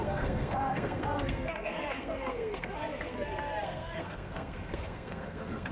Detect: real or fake fake